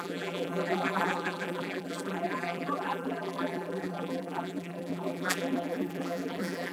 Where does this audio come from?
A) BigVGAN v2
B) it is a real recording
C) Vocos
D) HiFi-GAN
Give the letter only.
A